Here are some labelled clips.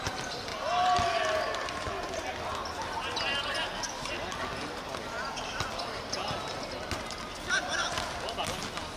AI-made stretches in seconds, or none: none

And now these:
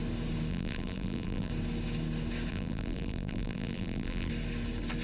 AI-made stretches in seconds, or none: 0.5-1.5; 2.5-4.3

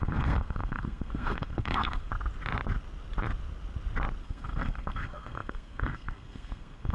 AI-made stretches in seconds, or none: 0.0-2.1; 4.2-6.9